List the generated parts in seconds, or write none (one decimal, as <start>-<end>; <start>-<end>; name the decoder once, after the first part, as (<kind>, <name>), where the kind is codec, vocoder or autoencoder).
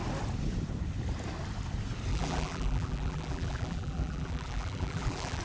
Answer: 2.1-5.4 (vocoder, BigVGAN v2)